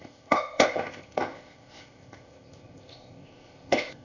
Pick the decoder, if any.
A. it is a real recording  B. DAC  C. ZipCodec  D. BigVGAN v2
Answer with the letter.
C